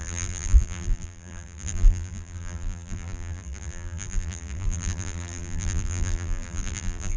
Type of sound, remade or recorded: remade